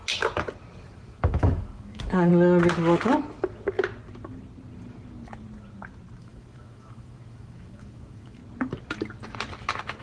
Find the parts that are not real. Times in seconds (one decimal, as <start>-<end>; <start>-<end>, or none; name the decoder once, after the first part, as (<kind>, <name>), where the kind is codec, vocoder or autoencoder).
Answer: 0.8-2.3 (autoencoder, DAC-VAE); 6.2-8.4